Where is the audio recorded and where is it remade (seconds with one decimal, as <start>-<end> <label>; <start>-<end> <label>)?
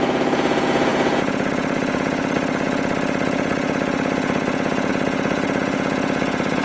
0.0-6.6 remade